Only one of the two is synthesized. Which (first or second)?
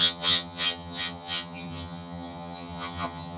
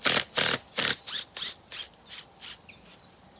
first